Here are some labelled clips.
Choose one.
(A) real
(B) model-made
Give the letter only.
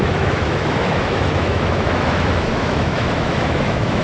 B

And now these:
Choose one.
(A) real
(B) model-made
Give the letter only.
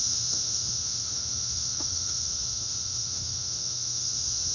B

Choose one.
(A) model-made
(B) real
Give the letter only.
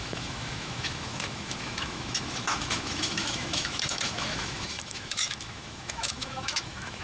A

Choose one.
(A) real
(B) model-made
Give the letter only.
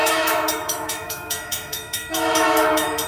B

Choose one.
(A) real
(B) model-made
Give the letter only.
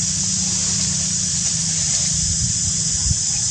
A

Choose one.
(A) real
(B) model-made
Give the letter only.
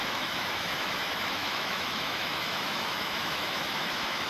B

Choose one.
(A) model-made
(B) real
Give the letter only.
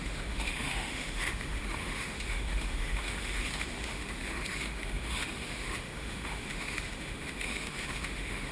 A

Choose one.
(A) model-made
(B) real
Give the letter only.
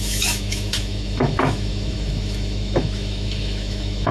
A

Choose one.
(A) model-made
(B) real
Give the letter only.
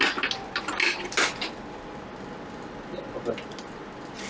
B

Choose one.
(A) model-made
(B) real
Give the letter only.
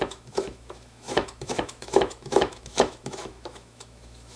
A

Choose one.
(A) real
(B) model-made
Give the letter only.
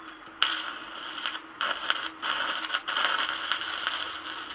A